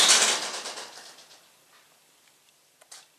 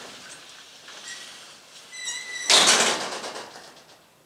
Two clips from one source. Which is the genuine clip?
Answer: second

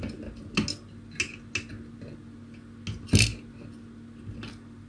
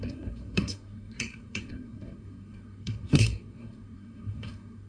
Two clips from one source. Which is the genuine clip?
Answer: first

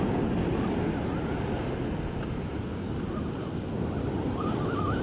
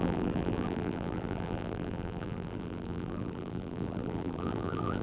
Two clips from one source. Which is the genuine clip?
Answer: first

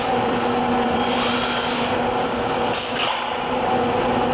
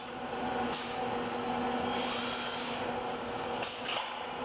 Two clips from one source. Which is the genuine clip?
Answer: second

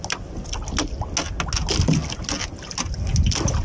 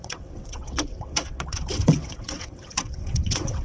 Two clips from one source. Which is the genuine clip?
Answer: first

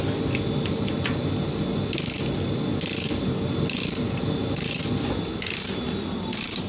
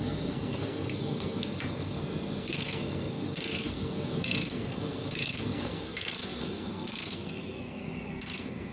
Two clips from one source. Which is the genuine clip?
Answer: first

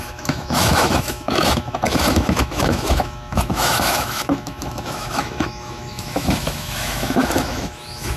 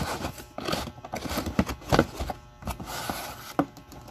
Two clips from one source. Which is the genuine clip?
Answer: second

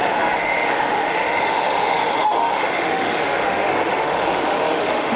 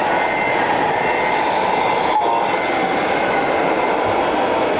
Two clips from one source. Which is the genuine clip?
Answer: second